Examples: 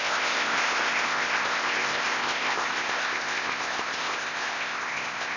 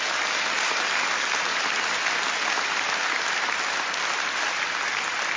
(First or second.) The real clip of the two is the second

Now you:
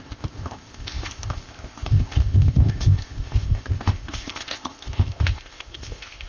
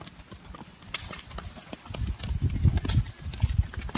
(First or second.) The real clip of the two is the second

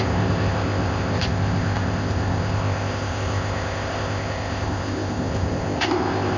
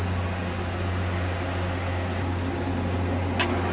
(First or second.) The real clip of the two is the second